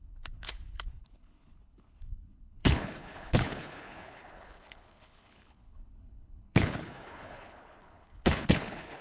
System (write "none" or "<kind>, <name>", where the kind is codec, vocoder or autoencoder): codec, HILCodec